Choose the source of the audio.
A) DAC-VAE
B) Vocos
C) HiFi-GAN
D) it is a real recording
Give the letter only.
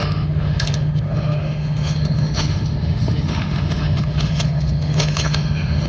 A